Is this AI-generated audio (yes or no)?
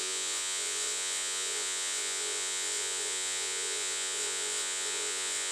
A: yes